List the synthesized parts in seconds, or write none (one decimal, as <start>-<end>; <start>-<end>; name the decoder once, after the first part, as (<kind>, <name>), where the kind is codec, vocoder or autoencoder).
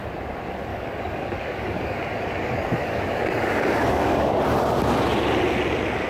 0.7-4.4 (codec, DAC)